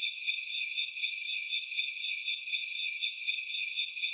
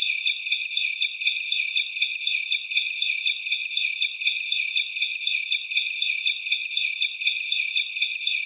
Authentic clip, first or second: second